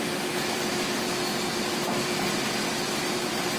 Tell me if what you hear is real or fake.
real